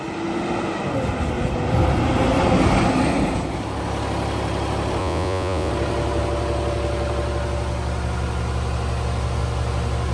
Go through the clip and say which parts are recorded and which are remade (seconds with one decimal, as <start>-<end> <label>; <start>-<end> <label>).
0.0-5.0 recorded; 5.0-5.7 remade; 5.7-10.1 recorded